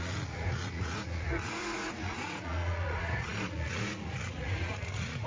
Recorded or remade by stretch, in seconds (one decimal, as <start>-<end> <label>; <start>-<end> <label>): 0.0-5.3 remade